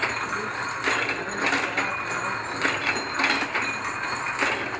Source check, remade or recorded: recorded